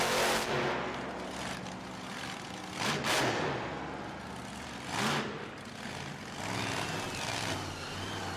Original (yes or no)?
yes